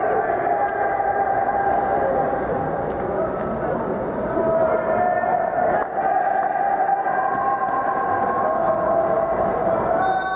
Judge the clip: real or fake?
real